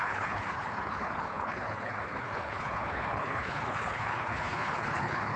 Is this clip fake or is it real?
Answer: fake